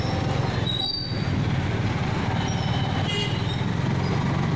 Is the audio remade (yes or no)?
no